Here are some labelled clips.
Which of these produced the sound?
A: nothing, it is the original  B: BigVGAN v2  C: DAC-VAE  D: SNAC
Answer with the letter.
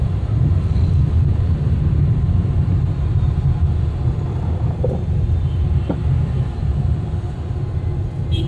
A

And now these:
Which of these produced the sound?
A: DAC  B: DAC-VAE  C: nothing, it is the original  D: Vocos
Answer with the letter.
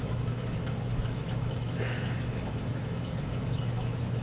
B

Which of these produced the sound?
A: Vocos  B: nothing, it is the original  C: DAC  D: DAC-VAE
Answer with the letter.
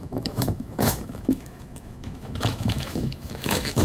D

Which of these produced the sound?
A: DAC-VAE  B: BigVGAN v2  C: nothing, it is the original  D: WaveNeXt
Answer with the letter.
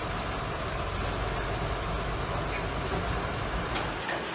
C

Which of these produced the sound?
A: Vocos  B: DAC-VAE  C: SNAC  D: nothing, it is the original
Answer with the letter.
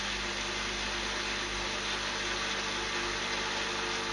D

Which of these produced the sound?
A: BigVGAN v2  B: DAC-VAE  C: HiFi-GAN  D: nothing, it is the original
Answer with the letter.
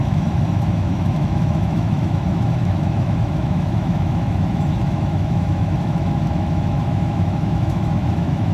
B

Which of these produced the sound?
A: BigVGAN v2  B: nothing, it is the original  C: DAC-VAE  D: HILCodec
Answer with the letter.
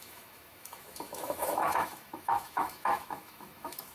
C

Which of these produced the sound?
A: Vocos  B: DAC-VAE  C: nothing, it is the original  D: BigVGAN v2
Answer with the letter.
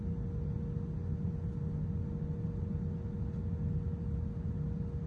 C